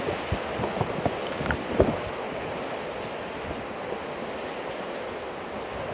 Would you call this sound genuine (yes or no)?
yes